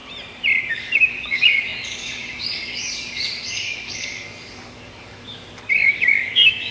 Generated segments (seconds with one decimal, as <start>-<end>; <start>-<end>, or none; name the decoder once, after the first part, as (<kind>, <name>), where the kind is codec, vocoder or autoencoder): 0.7-6.7 (codec, DAC)